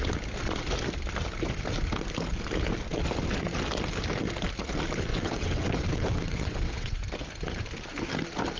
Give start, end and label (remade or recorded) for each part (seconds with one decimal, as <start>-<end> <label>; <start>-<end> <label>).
0.0-5.1 recorded; 5.1-7.0 remade; 7.0-8.6 recorded